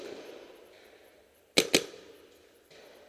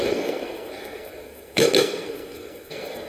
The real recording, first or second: first